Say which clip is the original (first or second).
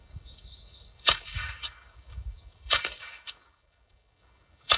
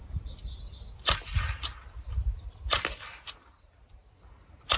second